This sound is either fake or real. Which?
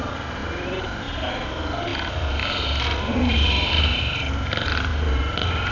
fake